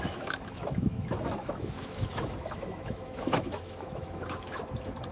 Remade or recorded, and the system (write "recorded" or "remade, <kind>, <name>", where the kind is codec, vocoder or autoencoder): remade, autoencoder, DAC-VAE